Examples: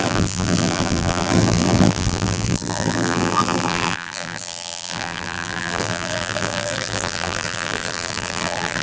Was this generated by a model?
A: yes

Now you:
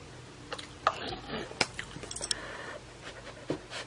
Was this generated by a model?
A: no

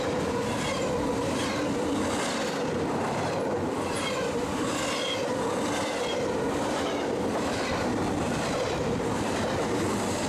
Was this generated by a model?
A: yes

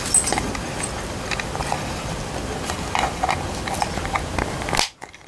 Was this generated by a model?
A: no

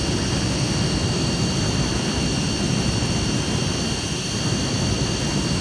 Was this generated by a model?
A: yes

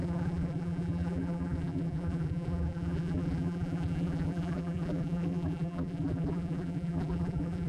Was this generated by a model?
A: yes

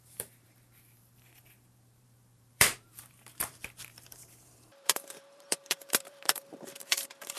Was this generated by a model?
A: yes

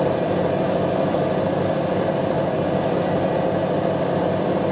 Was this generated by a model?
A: yes